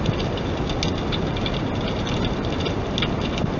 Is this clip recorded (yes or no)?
yes